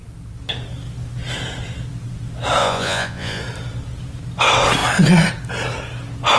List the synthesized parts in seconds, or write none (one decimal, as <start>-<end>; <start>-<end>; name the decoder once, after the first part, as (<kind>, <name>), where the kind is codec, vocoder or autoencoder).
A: 2.6-3.4 (vocoder, Vocos)